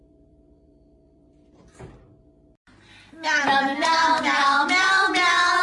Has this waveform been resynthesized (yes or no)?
yes